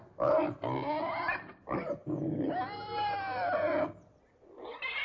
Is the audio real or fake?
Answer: real